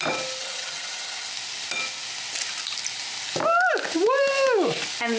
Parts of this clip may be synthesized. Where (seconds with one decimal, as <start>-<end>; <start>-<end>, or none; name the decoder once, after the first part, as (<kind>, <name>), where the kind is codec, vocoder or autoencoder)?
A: 0.4-1.3 (vocoder, HiFi-GAN)